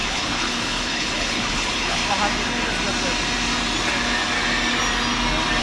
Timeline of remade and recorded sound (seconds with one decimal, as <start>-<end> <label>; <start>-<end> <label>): 0.0-2.0 remade; 2.0-5.6 recorded